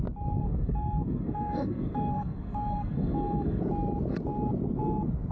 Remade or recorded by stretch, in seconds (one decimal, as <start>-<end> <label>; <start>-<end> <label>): 0.0-0.4 recorded; 0.4-3.6 remade; 3.6-5.3 recorded